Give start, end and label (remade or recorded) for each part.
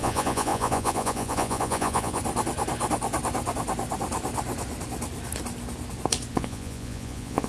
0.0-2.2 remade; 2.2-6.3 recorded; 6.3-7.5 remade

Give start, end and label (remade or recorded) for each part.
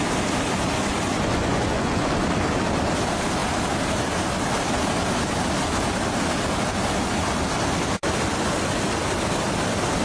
0.0-1.1 recorded; 1.1-2.1 remade; 2.1-10.0 recorded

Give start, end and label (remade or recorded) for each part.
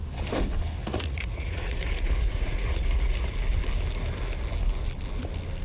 0.0-0.8 recorded; 0.8-3.3 remade; 3.3-5.6 recorded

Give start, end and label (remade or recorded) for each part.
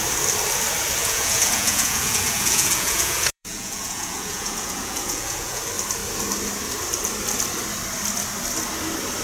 0.0-1.0 recorded; 1.0-5.6 remade; 5.6-9.2 recorded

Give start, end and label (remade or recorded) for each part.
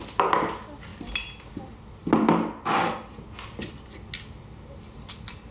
0.0-5.5 recorded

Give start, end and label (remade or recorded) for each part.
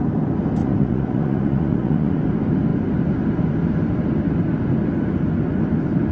0.0-0.6 recorded; 0.6-2.2 remade; 2.2-6.1 recorded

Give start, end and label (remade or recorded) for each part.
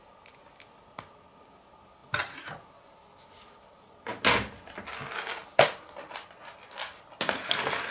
0.0-7.9 recorded